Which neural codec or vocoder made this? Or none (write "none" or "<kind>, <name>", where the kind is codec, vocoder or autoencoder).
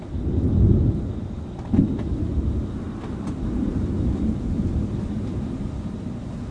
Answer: none